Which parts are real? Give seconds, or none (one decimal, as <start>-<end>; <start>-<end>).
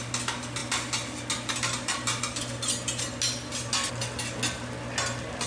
0.0-5.5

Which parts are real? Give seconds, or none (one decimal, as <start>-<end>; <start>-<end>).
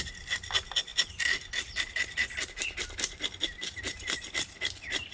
0.0-5.1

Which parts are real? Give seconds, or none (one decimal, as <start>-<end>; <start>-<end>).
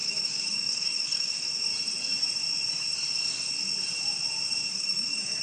1.7-4.7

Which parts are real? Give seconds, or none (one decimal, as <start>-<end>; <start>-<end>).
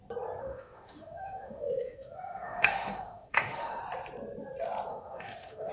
0.0-0.4; 3.8-4.9